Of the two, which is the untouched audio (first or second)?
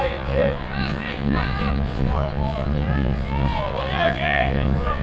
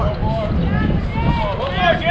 second